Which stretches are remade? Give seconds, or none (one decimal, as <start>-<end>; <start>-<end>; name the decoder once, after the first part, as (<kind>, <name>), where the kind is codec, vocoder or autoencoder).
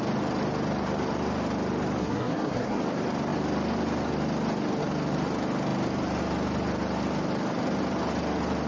2.0-2.8 (codec, SNAC)